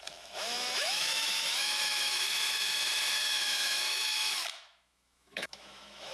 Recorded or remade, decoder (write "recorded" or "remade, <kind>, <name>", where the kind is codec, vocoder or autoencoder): remade, autoencoder, DAC-VAE